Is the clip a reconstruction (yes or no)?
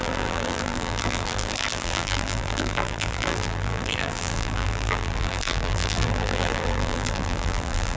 yes